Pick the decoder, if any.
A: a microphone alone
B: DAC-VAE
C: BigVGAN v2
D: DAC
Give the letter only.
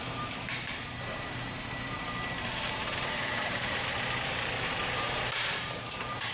C